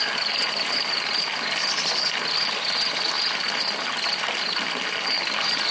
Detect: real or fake real